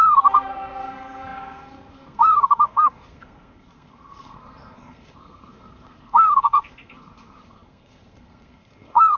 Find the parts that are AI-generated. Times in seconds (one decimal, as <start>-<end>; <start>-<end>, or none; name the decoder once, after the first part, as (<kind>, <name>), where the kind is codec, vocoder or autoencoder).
0.0-9.2 (codec, SNAC)